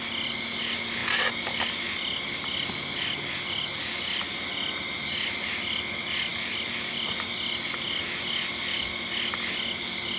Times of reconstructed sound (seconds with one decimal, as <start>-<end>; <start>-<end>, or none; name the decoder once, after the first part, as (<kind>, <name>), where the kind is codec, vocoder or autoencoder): none